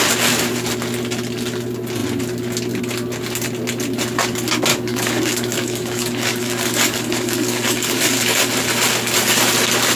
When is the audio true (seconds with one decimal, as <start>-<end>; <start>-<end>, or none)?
0.0-4.7; 8.4-10.0